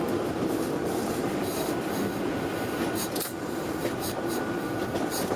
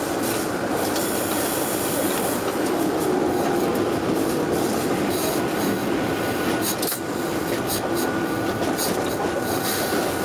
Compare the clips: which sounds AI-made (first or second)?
first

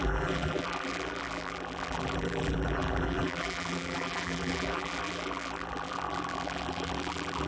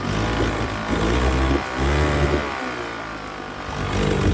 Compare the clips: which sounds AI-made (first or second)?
first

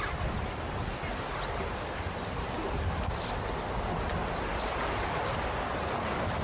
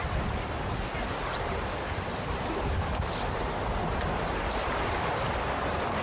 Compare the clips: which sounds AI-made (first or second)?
second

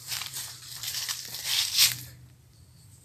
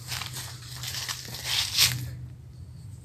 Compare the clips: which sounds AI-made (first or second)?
first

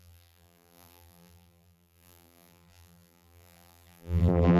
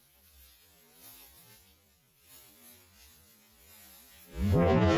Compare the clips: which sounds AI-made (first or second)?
first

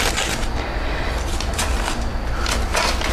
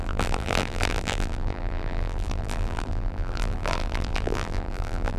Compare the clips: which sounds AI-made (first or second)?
second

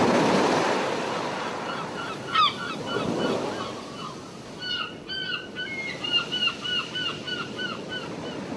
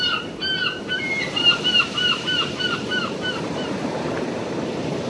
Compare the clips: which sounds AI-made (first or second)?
second